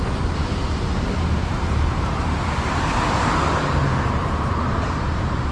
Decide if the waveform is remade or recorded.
remade